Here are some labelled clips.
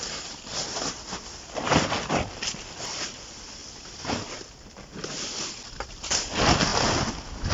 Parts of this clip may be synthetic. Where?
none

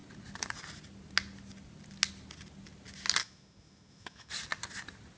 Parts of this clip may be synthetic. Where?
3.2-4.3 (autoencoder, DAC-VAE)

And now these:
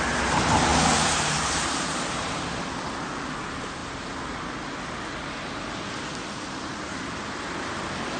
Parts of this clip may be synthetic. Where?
0.7-2.6 (vocoder, BigVGAN v2)

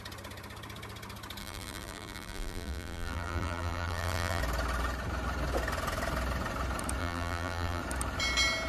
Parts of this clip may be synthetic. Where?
1.4-4.4 (vocoder, BigVGAN v2); 7.0-7.8

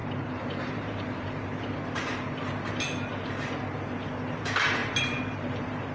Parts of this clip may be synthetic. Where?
0.0-1.7 (vocoder, BigVGAN v2); 4.8-5.9

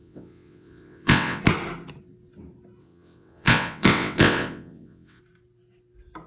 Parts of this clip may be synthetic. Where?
0.0-1.4 (vocoder, WaveNeXt); 2.8-5.2